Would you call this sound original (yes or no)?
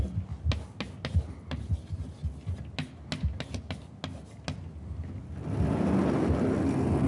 yes